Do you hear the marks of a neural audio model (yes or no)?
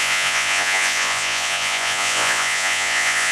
yes